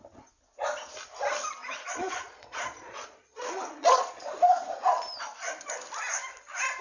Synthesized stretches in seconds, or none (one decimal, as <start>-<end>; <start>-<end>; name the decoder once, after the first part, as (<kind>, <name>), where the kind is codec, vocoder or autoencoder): 1.6-4.2 (vocoder, Vocos)